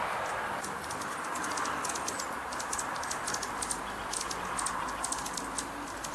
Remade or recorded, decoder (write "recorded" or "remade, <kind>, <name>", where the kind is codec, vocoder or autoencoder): recorded